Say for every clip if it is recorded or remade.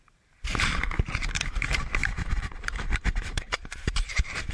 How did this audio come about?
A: remade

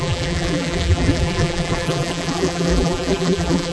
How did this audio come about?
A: remade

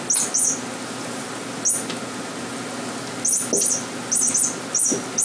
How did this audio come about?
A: recorded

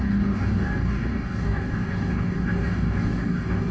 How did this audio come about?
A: remade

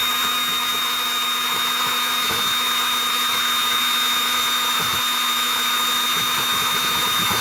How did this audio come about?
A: remade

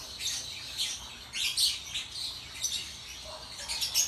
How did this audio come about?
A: recorded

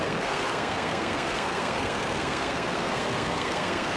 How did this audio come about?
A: remade